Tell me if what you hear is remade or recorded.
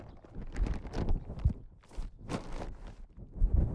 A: recorded